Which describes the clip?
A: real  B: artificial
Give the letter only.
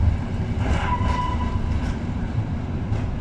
A